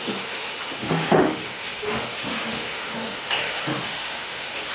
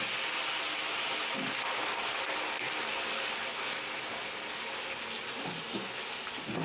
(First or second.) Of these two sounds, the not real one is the first